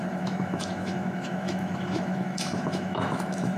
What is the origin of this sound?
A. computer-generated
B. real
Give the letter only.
A